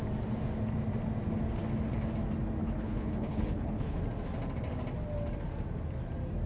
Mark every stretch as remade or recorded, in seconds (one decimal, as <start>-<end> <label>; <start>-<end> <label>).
0.0-2.6 recorded; 2.6-4.0 remade; 4.0-6.5 recorded